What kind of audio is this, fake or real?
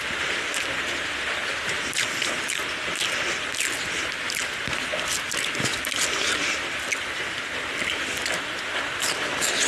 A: real